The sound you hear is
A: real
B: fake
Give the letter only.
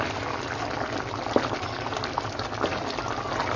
A